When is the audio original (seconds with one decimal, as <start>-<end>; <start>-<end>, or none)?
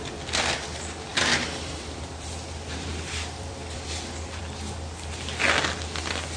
0.0-1.1; 4.4-6.4